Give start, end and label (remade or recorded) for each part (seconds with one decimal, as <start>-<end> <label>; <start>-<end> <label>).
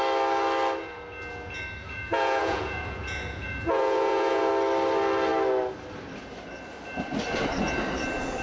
0.0-1.8 recorded; 1.8-4.5 remade; 4.5-8.4 recorded